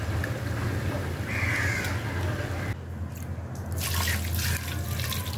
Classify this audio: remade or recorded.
recorded